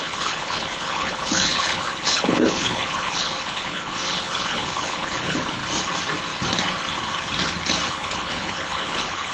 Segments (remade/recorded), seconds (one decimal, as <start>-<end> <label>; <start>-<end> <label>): 0.0-5.6 remade; 5.6-7.9 recorded; 7.9-9.3 remade